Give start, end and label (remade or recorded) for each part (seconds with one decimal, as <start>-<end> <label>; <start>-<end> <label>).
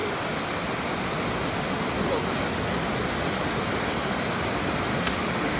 0.0-4.9 recorded; 4.9-5.6 remade